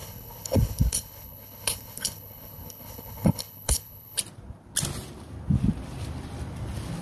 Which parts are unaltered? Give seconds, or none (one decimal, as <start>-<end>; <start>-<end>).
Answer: 4.2-7.0